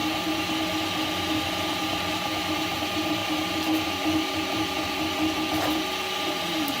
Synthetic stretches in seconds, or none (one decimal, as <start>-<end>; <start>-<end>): 2.1-3.2; 6.2-6.8